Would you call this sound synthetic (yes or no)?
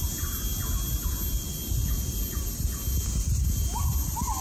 no